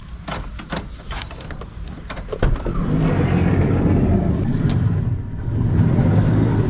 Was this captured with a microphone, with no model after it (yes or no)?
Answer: yes